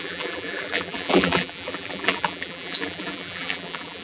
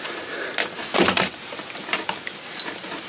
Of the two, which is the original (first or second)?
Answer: second